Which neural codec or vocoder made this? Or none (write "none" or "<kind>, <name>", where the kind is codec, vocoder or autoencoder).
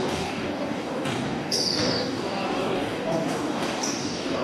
codec, DAC